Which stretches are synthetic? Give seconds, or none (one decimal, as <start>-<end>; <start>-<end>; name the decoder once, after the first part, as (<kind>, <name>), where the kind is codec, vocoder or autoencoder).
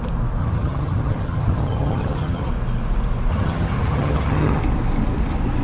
0.4-2.5 (vocoder, HiFi-GAN); 3.3-4.6